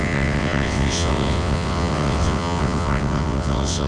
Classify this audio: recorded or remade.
remade